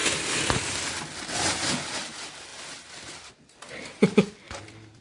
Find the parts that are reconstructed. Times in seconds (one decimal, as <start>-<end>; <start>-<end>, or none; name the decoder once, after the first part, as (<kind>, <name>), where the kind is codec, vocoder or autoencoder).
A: 0.6-5.0 (vocoder, BigVGAN v2)